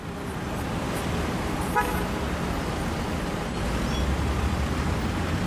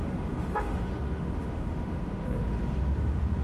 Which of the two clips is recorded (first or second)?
first